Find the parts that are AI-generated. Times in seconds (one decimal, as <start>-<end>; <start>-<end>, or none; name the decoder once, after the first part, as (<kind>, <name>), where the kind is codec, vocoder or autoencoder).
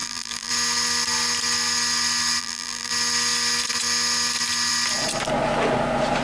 0.0-0.5 (vocoder, BigVGAN v2); 2.4-2.9